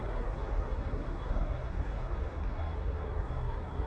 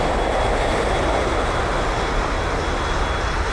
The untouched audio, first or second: second